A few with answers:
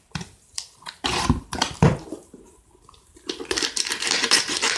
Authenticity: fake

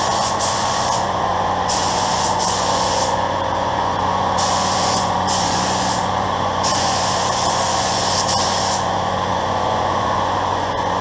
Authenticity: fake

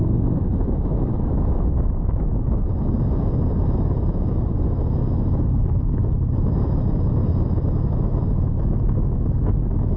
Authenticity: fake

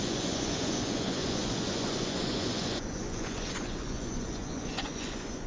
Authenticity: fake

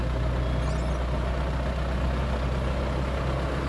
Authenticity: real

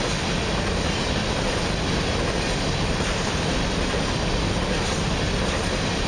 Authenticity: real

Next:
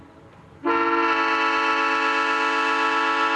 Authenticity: real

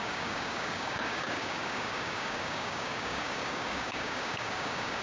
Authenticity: fake